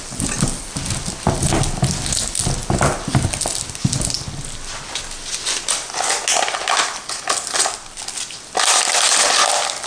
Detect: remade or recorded recorded